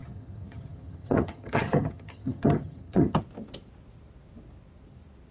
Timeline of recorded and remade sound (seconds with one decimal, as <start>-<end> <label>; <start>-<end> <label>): 0.0-3.2 remade; 3.2-5.3 recorded